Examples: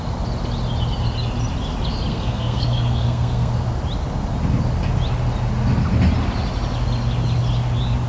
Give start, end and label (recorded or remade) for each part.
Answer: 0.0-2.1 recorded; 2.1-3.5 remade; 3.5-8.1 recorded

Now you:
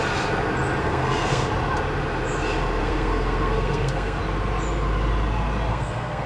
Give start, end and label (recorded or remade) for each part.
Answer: 0.0-0.8 recorded; 0.8-1.5 remade; 1.5-2.8 recorded; 2.8-4.2 remade; 4.2-5.7 recorded; 5.7-6.3 remade

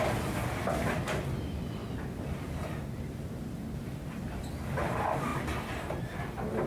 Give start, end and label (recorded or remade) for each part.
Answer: 0.0-6.7 recorded

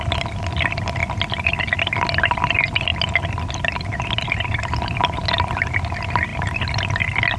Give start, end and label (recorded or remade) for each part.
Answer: 0.0-7.4 recorded

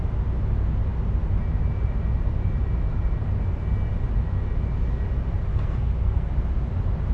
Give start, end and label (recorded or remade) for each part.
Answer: 0.0-5.5 recorded; 5.5-6.3 remade; 6.3-7.1 recorded

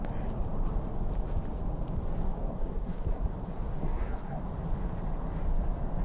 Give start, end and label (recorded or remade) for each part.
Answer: 0.0-2.5 recorded; 2.5-3.2 remade; 3.2-3.8 recorded; 3.8-4.4 remade; 4.4-6.0 recorded

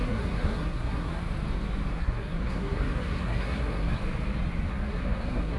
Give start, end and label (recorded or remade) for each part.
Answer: 0.0-1.2 remade; 1.2-1.9 recorded; 1.9-4.0 remade; 4.0-4.7 recorded; 4.7-5.6 remade

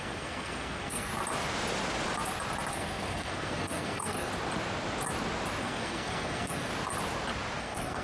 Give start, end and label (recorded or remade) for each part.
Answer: 0.0-1.1 remade; 1.1-2.7 recorded; 2.7-4.3 remade; 4.3-5.6 recorded; 5.6-6.7 remade; 6.7-7.6 recorded; 7.6-8.0 remade